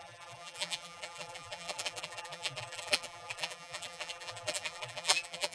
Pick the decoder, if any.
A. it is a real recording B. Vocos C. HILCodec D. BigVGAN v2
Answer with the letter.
D